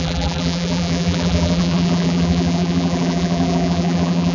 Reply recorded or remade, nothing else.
remade